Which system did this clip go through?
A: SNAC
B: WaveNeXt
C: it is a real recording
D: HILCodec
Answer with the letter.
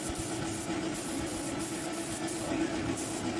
C